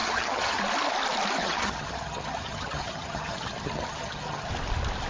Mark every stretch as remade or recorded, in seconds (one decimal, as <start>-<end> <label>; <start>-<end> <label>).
0.0-0.6 remade; 0.6-1.4 recorded; 1.4-4.5 remade; 4.5-5.1 recorded

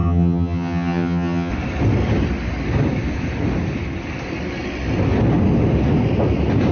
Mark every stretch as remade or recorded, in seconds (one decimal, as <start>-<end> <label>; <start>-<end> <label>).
0.0-1.5 remade; 1.5-6.7 recorded